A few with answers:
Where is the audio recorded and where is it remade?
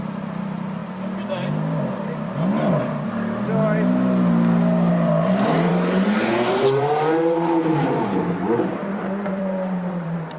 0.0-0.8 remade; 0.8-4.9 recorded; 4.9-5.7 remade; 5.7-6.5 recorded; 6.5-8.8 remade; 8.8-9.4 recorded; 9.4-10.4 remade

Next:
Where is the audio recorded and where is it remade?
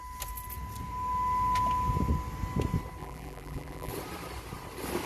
0.0-3.0 recorded; 3.0-3.9 remade; 3.9-5.1 recorded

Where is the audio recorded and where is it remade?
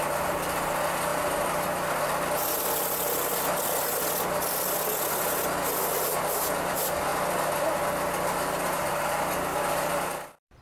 0.0-10.6 recorded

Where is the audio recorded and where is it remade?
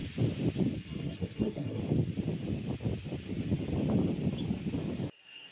0.0-0.8 recorded; 0.8-1.8 remade; 1.8-5.1 recorded; 5.1-5.5 remade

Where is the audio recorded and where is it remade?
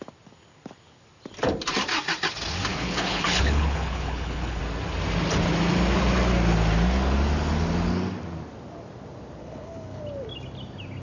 0.0-2.7 recorded; 2.7-4.6 remade; 4.6-9.4 recorded; 9.4-10.0 remade; 10.0-11.0 recorded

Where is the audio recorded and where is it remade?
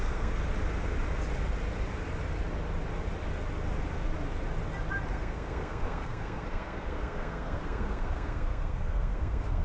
0.0-0.4 remade; 0.4-5.1 recorded; 5.1-9.6 remade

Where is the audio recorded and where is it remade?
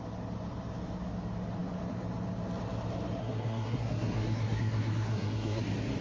0.0-3.2 recorded; 3.2-5.6 remade; 5.6-6.0 recorded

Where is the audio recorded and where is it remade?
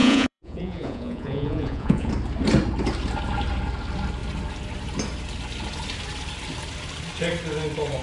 0.0-2.1 remade; 2.1-8.0 recorded